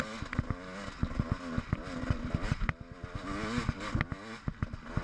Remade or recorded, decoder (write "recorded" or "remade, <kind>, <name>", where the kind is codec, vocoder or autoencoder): recorded